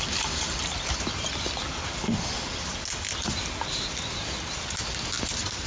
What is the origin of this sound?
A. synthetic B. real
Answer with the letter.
B